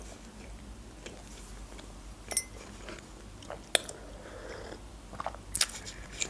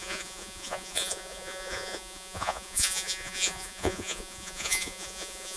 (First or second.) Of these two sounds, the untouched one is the first